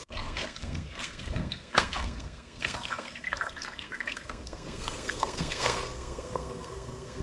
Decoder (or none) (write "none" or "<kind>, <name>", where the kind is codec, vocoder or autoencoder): codec, SNAC